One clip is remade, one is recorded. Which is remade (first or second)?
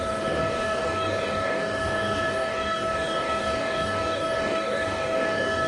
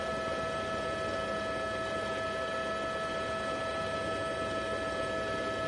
first